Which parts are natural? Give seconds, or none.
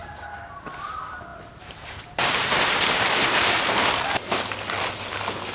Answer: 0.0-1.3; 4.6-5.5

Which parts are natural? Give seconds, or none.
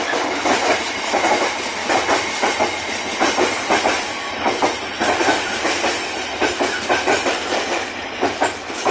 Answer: 0.0-1.8; 3.8-8.9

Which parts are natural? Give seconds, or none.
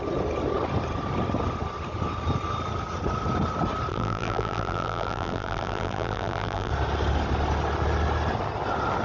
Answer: 0.0-3.9; 6.7-9.0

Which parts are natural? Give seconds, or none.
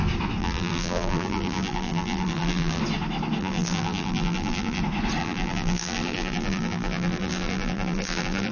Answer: 0.0-0.4; 2.8-3.4; 4.8-5.2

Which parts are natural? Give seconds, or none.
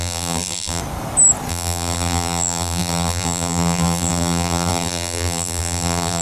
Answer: 0.8-1.5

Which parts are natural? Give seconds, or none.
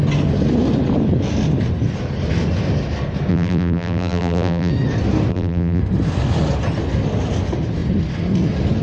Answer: 0.0-3.3; 4.7-5.3; 5.8-8.8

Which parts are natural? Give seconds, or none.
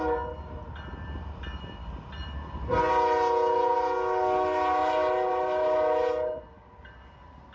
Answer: 0.0-4.8; 6.4-7.5